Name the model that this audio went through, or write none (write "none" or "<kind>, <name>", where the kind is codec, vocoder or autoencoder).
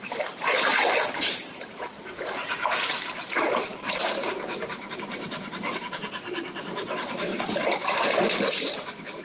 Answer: vocoder, BigVGAN v2